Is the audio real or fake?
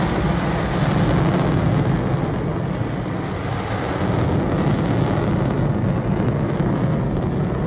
real